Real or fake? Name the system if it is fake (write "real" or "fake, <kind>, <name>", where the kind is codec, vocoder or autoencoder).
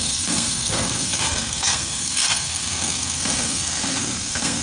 fake, codec, SNAC